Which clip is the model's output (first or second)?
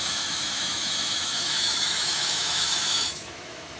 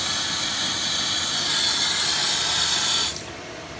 first